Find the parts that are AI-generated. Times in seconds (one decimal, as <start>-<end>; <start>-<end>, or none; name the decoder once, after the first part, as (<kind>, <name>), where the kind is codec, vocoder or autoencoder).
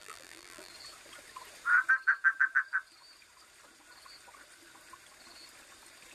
0.0-0.7 (vocoder, BigVGAN v2)